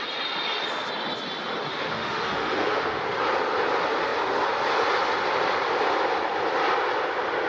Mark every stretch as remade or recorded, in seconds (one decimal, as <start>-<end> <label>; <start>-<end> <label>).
0.0-1.7 recorded; 1.7-3.0 remade; 3.0-7.5 recorded